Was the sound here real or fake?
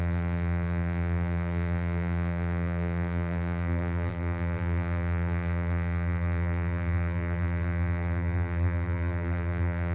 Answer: fake